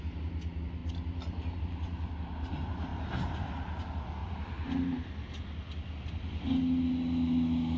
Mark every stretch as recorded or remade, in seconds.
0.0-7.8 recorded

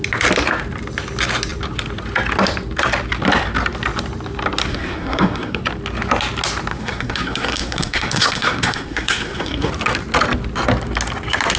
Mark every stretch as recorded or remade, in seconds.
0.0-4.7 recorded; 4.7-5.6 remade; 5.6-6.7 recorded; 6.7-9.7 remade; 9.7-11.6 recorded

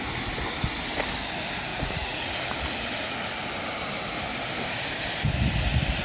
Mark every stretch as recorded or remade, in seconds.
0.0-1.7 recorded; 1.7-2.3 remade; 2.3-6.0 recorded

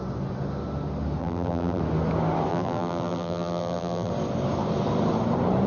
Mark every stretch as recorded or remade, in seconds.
0.0-1.2 recorded; 1.2-1.8 remade; 1.8-2.5 recorded; 2.5-4.1 remade; 4.1-5.7 recorded

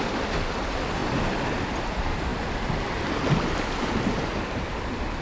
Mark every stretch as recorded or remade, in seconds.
0.0-1.0 remade; 1.0-1.6 recorded; 1.6-2.3 remade; 2.3-4.7 recorded; 4.7-5.2 remade